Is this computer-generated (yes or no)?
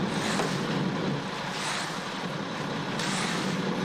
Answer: no